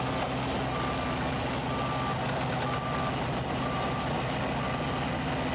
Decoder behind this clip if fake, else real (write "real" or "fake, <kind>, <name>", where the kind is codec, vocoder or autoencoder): real